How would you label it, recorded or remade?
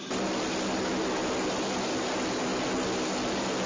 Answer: recorded